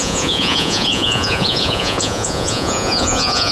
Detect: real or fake fake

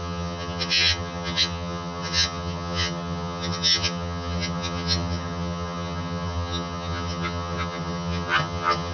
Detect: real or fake fake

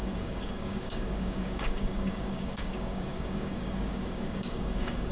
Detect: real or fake fake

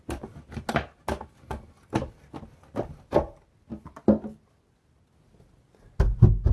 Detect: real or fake real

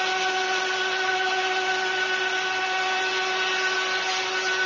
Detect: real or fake real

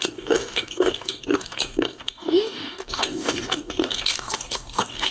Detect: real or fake fake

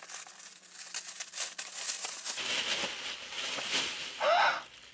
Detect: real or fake real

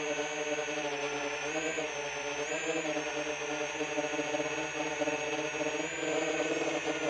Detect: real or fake real